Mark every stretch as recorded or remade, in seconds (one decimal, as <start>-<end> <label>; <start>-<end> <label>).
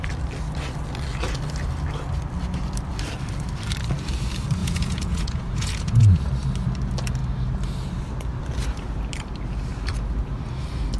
0.0-4.6 recorded; 4.6-6.2 remade; 6.2-11.0 recorded